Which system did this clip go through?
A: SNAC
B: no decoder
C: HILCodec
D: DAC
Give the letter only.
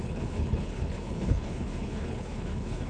C